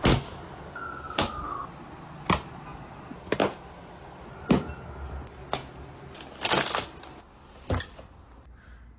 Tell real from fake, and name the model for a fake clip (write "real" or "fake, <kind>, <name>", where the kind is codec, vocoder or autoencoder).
real